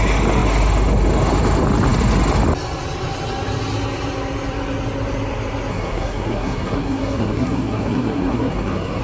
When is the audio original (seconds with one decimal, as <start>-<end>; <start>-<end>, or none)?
0.0-5.7

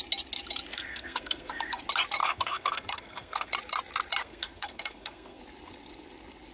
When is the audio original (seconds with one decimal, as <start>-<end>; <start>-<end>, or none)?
0.0-0.7; 1.8-2.2; 3.5-4.2; 5.4-6.5

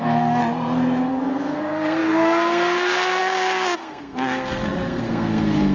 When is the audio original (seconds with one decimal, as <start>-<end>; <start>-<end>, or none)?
0.4-1.1

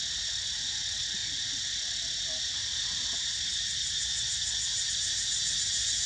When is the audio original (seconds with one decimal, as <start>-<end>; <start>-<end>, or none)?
0.0-6.1

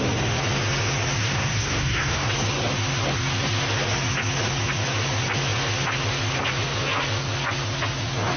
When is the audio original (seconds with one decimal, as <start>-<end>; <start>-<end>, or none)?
0.0-1.2; 2.3-8.4

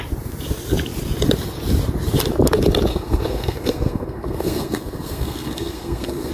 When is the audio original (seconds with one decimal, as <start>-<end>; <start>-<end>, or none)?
0.0-2.9

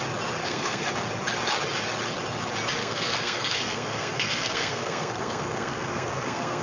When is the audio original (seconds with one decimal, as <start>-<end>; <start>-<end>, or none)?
0.0-0.4; 0.9-2.8

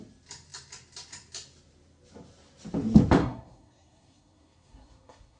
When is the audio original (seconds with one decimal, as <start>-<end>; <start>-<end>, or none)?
0.0-3.2